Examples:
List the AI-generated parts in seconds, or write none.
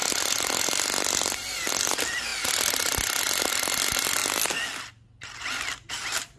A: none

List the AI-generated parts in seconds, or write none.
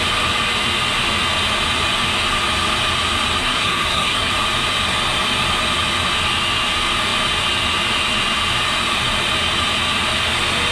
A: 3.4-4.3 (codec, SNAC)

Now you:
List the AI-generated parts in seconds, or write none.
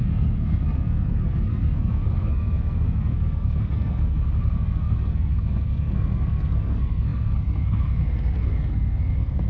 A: 0.0-9.5 (codec, SNAC)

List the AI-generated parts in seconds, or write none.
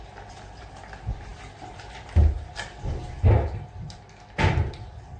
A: none